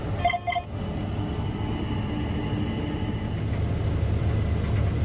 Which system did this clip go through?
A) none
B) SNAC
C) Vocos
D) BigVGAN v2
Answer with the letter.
A